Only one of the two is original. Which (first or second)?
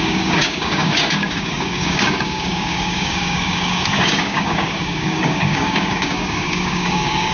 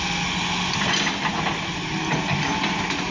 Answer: second